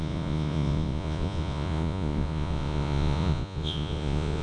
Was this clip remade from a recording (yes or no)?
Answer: yes